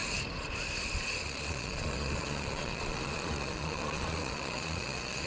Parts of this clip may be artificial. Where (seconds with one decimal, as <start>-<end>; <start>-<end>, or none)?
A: 1.2-5.3